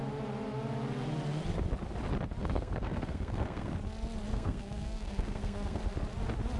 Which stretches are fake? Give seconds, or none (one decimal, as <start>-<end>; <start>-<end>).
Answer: 2.4-3.7; 4.3-5.8